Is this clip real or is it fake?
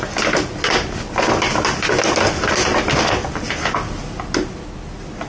real